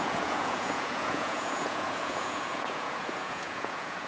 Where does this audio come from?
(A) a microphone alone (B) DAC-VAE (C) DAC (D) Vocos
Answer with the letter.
D